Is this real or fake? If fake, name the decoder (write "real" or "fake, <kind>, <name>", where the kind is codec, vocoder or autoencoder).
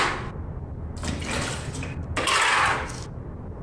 real